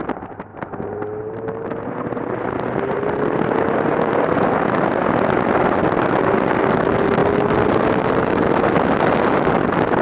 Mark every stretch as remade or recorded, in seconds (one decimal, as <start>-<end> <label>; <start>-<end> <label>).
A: 0.0-10.0 recorded